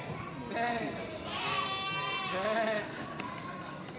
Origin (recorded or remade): recorded